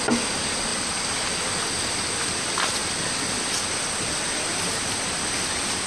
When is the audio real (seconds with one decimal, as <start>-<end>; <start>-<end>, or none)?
0.0-5.9

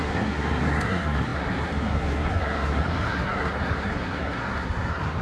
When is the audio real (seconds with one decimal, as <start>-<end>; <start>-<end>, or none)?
none

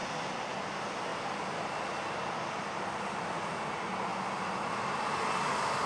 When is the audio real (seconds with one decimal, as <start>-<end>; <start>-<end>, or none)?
0.0-5.9

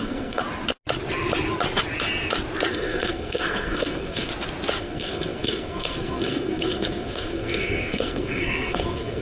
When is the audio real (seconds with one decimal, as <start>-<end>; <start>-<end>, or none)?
0.4-2.7; 4.3-4.8

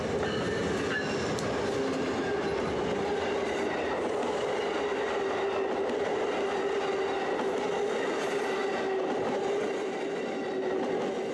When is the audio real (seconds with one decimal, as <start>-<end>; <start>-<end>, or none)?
0.0-11.3